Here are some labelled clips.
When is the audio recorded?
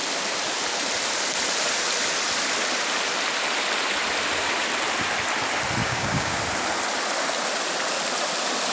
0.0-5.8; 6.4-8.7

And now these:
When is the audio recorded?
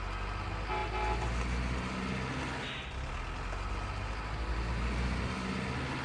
0.0-6.0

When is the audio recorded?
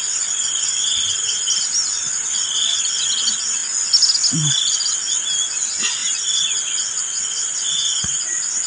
0.0-8.7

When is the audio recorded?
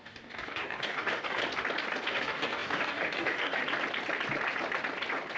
1.4-2.1; 3.6-5.4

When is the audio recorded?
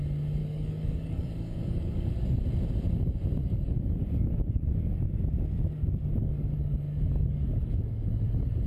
0.0-0.4; 2.4-3.4; 5.0-6.2